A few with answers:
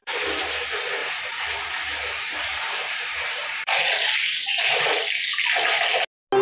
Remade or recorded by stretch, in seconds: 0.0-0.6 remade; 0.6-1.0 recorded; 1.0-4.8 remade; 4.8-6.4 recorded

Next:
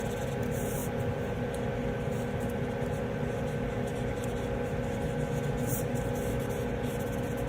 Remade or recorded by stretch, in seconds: 0.0-7.5 recorded

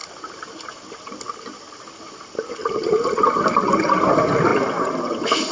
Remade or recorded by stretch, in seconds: 0.0-2.6 recorded; 2.6-3.2 remade; 3.2-5.5 recorded

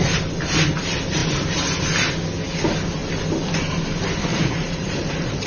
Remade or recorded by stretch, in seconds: 0.0-4.3 recorded; 4.3-5.5 remade

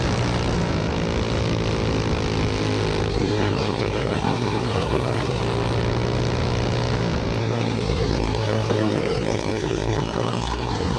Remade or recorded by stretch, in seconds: 0.0-3.1 recorded; 3.1-5.4 remade; 5.4-7.4 recorded; 7.4-11.0 remade

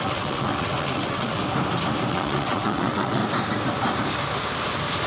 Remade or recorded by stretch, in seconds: 0.0-1.4 remade; 1.4-2.1 recorded; 2.1-3.2 remade; 3.2-5.1 recorded

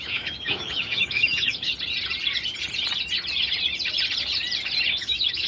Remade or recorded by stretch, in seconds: 0.0-1.7 remade; 1.7-5.0 recorded; 5.0-5.5 remade